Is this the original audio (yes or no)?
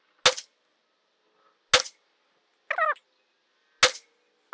yes